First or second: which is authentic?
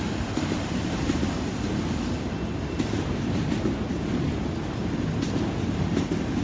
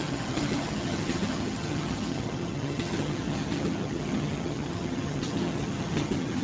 first